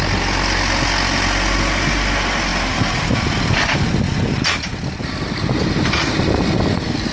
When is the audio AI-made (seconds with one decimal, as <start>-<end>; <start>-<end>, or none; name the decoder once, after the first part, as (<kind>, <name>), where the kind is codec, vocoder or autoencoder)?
none